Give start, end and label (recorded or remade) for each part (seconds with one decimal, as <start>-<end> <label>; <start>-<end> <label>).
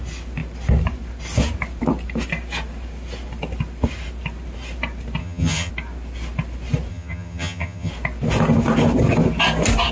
0.0-5.2 recorded; 5.2-5.7 remade; 5.7-6.9 recorded; 6.9-7.9 remade; 7.9-9.9 recorded